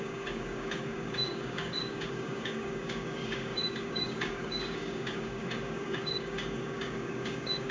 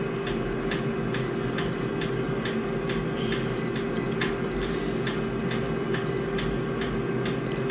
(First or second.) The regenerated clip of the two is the first